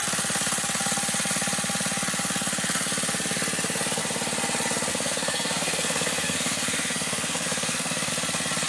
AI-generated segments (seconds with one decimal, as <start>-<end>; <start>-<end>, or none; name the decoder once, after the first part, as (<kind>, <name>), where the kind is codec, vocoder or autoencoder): 4.9-8.1 (codec, SNAC)